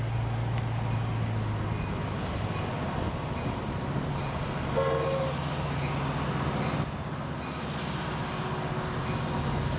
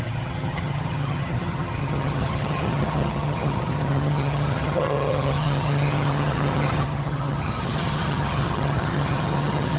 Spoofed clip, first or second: second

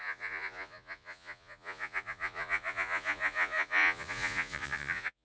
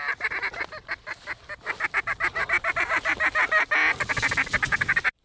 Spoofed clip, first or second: first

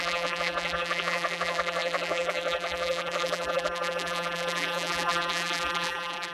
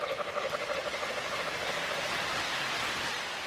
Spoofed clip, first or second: first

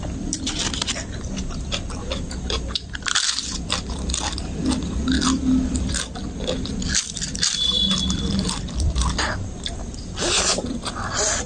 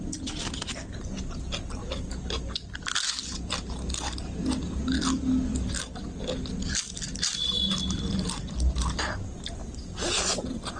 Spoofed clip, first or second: first